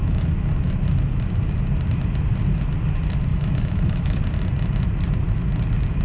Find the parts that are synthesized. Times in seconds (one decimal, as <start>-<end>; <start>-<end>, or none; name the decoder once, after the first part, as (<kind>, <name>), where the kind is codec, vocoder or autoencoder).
3.3-4.2 (autoencoder, DAC-VAE)